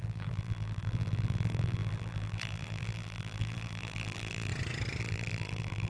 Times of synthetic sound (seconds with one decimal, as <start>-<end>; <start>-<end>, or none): 0.0-4.5; 5.0-5.9